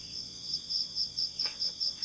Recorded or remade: remade